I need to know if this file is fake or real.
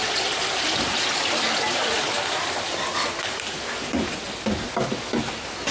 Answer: real